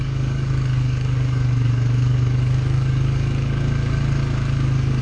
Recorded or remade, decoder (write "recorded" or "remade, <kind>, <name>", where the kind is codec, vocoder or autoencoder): remade, codec, DAC